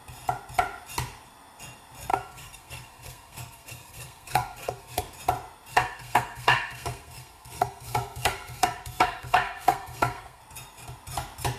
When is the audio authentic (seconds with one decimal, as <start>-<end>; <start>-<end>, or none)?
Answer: 0.0-2.1; 5.0-5.7; 10.4-11.6

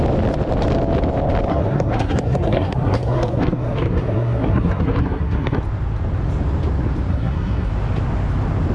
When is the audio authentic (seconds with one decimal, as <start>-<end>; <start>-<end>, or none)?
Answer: 0.0-1.5; 5.6-7.1; 7.7-8.7

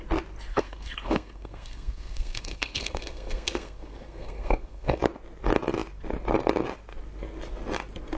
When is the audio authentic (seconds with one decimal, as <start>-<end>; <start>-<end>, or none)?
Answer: 0.0-0.5; 5.0-8.2

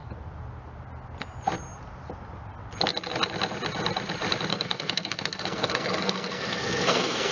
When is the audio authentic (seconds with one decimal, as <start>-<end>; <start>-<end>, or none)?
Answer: 0.0-4.5

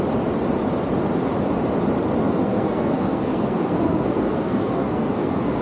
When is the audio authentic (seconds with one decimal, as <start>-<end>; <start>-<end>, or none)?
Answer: 0.0-2.2